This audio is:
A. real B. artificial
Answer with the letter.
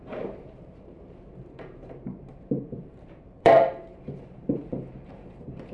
B